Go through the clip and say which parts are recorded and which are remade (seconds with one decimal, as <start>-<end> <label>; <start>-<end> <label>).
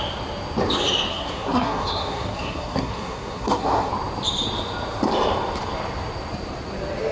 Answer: 0.0-1.1 recorded; 1.1-3.9 remade; 3.9-7.1 recorded